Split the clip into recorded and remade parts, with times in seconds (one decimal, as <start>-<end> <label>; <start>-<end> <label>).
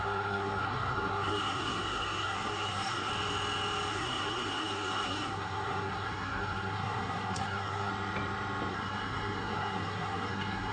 0.0-3.1 remade; 3.1-3.9 recorded; 3.9-7.9 remade; 7.9-8.7 recorded; 8.7-10.7 remade